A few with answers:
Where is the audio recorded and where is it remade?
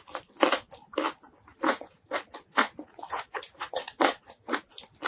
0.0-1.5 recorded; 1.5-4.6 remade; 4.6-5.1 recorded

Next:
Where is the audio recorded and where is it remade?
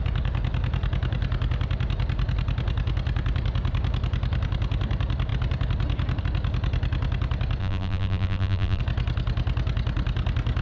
0.0-7.6 recorded; 7.6-8.8 remade; 8.8-10.6 recorded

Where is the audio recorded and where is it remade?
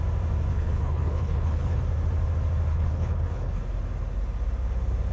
0.0-0.5 recorded; 0.5-1.8 remade; 1.8-2.7 recorded; 2.7-3.6 remade; 3.6-5.1 recorded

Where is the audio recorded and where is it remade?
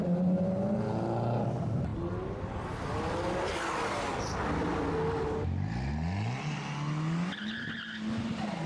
0.0-8.7 recorded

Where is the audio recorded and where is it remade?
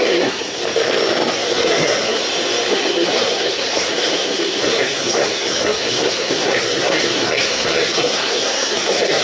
0.0-0.6 remade; 0.6-1.3 recorded; 1.3-2.2 remade; 2.2-2.7 recorded; 2.7-9.2 remade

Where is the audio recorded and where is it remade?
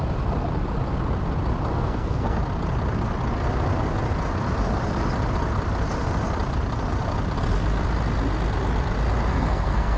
0.0-1.7 recorded; 1.7-2.4 remade; 2.4-9.3 recorded; 9.3-10.0 remade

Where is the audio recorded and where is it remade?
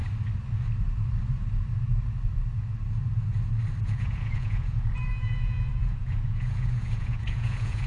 0.0-3.8 recorded; 3.8-7.9 remade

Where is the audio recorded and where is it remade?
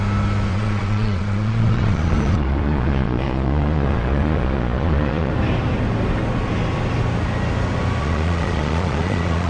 0.0-0.5 recorded; 0.5-5.3 remade; 5.3-8.0 recorded; 8.0-9.5 remade